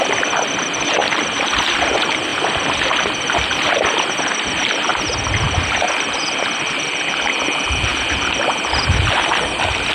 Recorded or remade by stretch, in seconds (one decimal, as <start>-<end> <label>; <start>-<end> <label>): 0.0-9.9 recorded